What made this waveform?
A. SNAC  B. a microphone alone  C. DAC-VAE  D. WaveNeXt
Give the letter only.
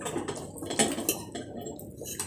B